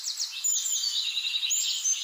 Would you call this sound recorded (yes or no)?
yes